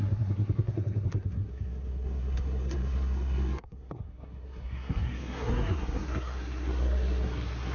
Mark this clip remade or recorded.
remade